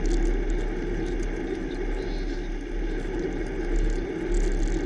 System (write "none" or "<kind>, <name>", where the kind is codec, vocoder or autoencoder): none